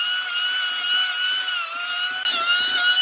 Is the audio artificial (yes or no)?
no